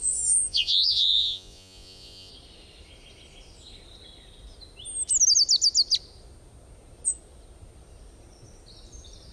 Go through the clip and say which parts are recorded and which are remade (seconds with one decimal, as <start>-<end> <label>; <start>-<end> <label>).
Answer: 0.0-2.3 remade; 2.3-9.3 recorded